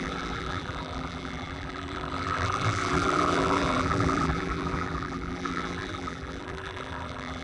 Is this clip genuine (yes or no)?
no